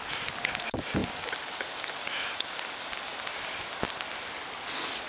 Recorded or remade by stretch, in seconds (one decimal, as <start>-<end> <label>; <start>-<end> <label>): 0.0-5.1 recorded